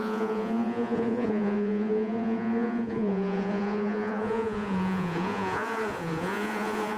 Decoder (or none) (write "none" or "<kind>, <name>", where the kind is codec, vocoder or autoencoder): vocoder, Vocos